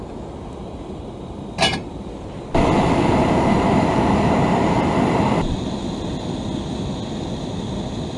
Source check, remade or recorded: recorded